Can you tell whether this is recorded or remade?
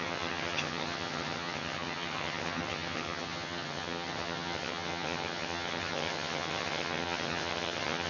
remade